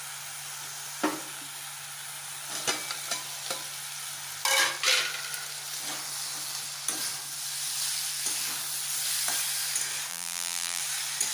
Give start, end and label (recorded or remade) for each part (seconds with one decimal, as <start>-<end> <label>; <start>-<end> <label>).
0.0-10.1 recorded; 10.1-10.8 remade; 10.8-11.3 recorded